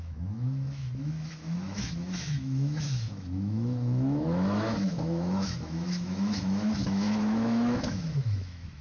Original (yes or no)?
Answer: no